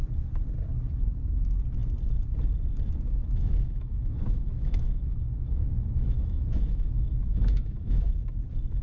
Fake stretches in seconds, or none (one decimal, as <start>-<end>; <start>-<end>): 3.2-8.1